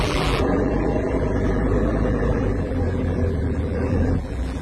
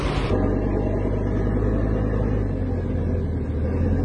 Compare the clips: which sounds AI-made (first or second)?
first